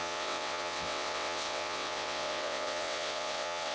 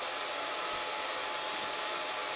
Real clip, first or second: second